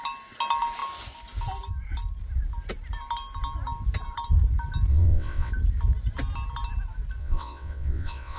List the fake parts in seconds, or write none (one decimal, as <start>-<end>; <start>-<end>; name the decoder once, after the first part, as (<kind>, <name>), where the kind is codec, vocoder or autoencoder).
4.9-5.5 (vocoder, WaveNeXt); 7.2-8.4